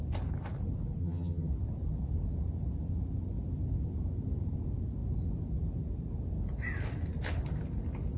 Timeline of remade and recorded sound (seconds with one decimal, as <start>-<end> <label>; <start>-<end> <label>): 0.0-1.0 recorded; 1.0-1.5 remade; 1.5-8.2 recorded